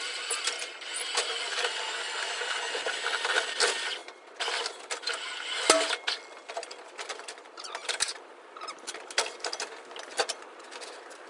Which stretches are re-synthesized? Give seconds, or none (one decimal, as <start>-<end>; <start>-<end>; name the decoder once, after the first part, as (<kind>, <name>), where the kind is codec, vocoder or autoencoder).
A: 7.8-9.0 (vocoder, BigVGAN v2)

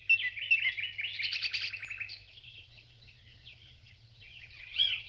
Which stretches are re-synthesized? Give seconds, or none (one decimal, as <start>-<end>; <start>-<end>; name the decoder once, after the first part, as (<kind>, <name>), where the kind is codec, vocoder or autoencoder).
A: 2.3-5.1 (vocoder, Vocos)

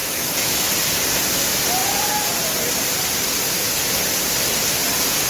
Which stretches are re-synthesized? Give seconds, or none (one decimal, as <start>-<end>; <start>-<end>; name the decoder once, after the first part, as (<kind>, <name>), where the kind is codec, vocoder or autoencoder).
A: 0.0-0.7 (autoencoder, DAC-VAE)

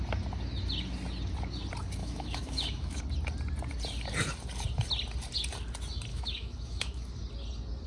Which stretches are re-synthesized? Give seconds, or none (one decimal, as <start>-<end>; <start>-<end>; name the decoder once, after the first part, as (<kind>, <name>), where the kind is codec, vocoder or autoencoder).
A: 2.0-3.0 (autoencoder, DAC-VAE); 6.1-7.1

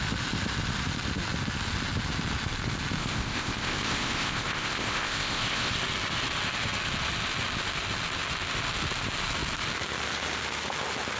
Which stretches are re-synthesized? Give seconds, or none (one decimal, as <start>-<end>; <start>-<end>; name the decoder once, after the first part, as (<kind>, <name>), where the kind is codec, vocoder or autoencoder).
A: 3.0-5.7 (codec, ZipCodec)